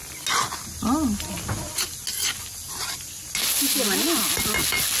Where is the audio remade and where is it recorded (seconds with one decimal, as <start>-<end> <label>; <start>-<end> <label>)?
0.0-5.0 recorded